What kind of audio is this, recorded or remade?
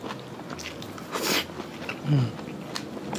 recorded